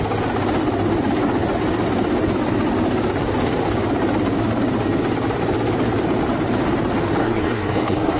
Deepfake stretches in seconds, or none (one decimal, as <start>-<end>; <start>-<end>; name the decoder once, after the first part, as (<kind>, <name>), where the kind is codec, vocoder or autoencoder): 7.2-8.2 (codec, SNAC)